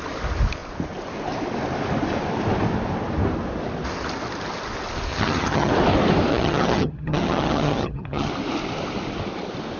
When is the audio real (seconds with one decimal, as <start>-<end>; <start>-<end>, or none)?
0.0-5.1; 5.7-6.3; 8.3-9.8